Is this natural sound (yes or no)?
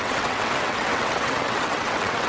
no